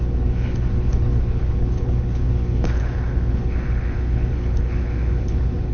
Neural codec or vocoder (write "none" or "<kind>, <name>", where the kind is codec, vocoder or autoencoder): codec, HILCodec